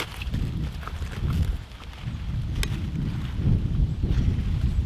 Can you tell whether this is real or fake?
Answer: real